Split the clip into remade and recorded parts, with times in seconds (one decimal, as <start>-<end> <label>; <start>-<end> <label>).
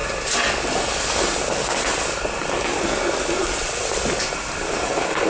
0.0-1.9 recorded; 1.9-5.3 remade